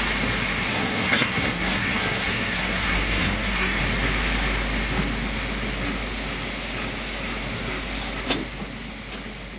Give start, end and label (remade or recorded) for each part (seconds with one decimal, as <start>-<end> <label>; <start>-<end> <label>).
0.0-0.7 recorded; 0.7-3.8 remade; 3.8-9.6 recorded